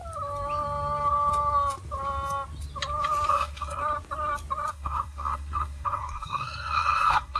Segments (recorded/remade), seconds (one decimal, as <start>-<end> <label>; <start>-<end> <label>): 0.0-3.3 recorded; 3.3-3.8 remade; 3.8-4.7 recorded; 4.7-7.4 remade